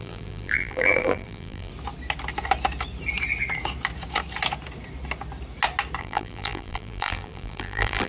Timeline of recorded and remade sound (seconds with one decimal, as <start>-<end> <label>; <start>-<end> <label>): 0.0-1.7 remade; 1.7-6.0 recorded; 6.0-8.1 remade